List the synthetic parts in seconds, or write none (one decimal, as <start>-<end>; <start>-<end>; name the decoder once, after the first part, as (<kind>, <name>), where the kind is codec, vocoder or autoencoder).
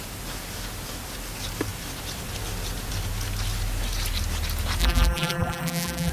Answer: 4.8-6.1 (vocoder, BigVGAN v2)